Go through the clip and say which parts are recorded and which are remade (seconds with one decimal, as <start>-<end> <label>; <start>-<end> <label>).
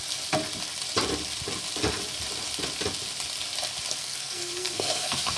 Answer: 0.0-4.0 recorded; 4.0-5.4 remade